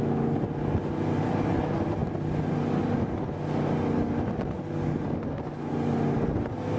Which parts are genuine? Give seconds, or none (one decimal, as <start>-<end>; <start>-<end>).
0.0-6.8